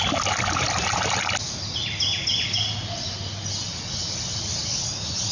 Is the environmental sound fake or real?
real